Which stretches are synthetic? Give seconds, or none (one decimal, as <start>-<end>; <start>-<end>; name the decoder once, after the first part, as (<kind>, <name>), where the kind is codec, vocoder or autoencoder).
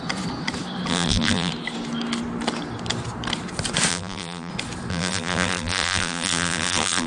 0.9-1.5 (vocoder, BigVGAN v2); 3.9-4.5; 4.9-7.1